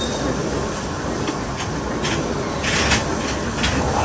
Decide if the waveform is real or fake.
real